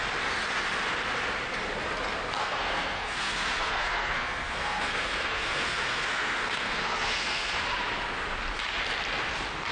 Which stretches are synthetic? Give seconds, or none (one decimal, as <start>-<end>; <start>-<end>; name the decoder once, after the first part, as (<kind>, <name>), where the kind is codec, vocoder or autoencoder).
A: 2.4-7.6 (codec, SNAC)